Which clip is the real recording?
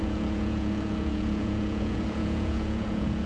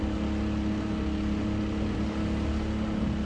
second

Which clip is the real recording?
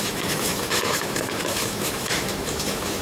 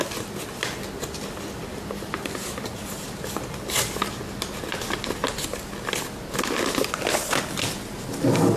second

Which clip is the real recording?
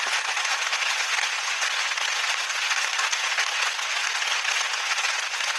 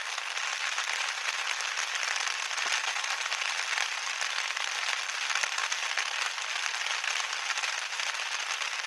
second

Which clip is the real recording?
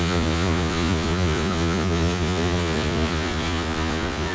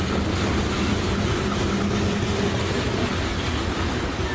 second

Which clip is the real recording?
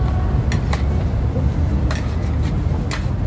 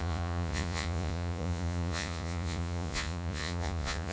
first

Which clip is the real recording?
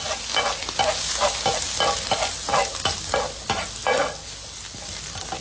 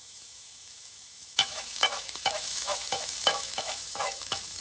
first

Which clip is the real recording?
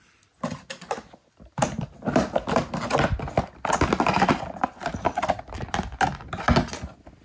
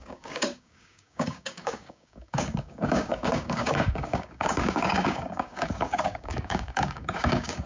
first